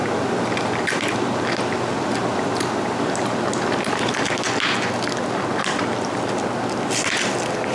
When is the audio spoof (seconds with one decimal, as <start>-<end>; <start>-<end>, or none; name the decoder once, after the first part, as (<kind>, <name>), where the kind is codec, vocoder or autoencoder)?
none